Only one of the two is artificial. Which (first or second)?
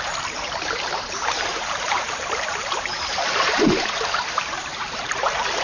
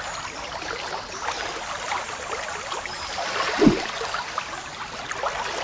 first